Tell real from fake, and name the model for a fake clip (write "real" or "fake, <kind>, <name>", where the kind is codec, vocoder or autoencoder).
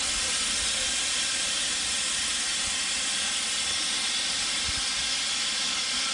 real